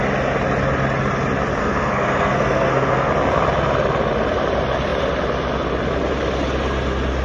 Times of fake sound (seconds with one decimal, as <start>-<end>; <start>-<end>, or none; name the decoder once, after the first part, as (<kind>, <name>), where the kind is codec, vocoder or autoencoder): 1.6-3.1 (codec, SNAC)